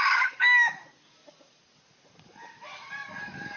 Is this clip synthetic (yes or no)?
yes